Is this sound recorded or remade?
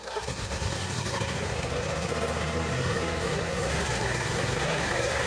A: remade